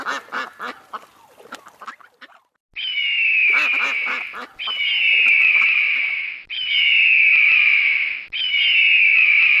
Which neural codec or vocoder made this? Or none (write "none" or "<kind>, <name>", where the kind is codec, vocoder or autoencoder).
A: none